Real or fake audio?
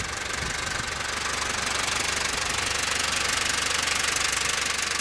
real